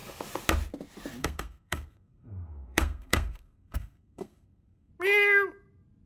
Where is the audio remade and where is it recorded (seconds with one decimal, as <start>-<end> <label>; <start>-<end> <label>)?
0.0-1.2 recorded; 1.2-4.9 remade; 4.9-6.1 recorded

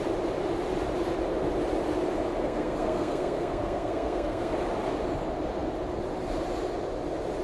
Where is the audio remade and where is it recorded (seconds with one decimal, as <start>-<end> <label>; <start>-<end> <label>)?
0.0-2.4 recorded; 2.4-4.5 remade; 4.5-7.4 recorded

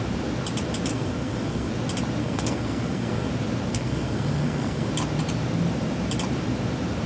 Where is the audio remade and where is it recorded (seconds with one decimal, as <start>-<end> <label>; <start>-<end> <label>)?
0.0-0.9 recorded; 0.9-1.7 remade; 1.7-2.2 recorded; 2.2-3.3 remade; 3.3-3.7 recorded; 3.7-4.9 remade; 4.9-7.1 recorded

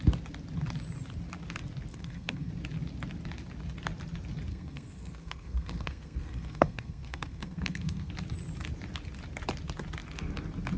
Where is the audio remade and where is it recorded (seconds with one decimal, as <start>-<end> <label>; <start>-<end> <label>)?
0.0-1.9 recorded; 1.9-2.5 remade; 2.5-4.5 recorded; 4.5-8.1 remade; 8.1-10.8 recorded

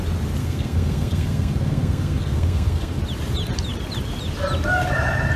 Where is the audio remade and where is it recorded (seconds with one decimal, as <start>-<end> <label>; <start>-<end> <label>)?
0.0-0.4 recorded; 0.4-3.0 remade; 3.0-5.4 recorded

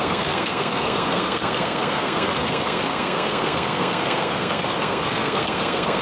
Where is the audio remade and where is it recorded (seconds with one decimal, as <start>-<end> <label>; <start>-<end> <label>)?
0.0-6.0 remade

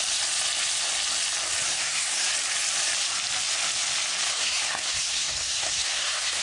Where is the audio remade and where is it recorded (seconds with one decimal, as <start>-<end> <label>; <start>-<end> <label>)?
0.0-1.7 recorded; 1.7-2.3 remade; 2.3-4.3 recorded; 4.3-6.4 remade

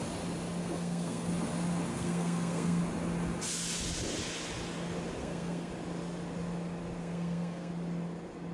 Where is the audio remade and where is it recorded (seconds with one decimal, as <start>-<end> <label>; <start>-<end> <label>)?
0.0-0.6 recorded; 0.6-1.3 remade; 1.3-1.9 recorded; 1.9-2.8 remade; 2.8-5.2 recorded; 5.2-5.7 remade; 5.7-7.0 recorded; 7.0-7.7 remade; 7.7-8.5 recorded